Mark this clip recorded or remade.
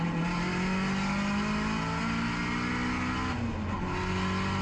recorded